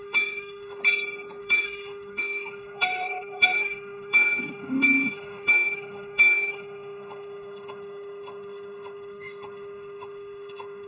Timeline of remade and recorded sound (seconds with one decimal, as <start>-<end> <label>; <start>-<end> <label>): 0.0-0.8 remade; 0.8-1.4 recorded; 1.4-10.9 remade